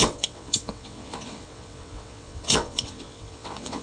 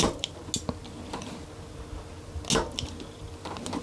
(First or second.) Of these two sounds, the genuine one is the second